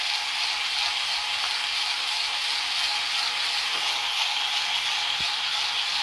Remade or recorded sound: recorded